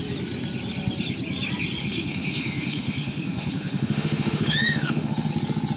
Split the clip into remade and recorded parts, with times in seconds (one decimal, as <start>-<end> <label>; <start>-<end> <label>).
0.0-1.8 recorded; 1.8-5.3 remade; 5.3-5.8 recorded

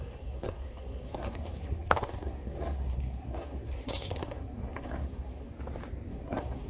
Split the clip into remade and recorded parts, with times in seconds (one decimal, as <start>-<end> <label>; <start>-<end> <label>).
0.0-5.5 remade; 5.5-6.1 recorded; 6.1-6.7 remade

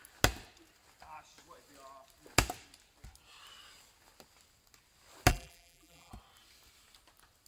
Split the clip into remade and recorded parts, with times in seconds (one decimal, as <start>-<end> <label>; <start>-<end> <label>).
0.0-5.3 recorded; 5.3-6.1 remade; 6.1-7.5 recorded

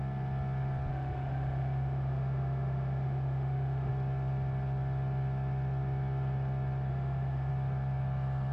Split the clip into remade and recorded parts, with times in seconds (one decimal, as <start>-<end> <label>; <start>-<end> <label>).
0.0-0.9 recorded; 0.9-3.9 remade; 3.9-6.9 recorded; 6.9-7.5 remade; 7.5-8.5 recorded